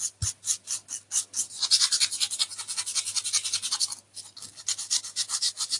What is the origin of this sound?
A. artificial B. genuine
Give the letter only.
B